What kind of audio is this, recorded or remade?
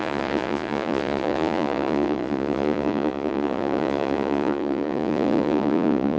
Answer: remade